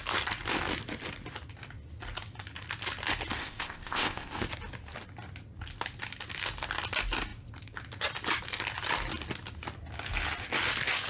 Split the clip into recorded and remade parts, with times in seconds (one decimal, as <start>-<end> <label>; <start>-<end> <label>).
0.0-3.4 recorded; 3.4-4.5 remade; 4.5-11.1 recorded